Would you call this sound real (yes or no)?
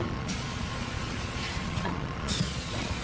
no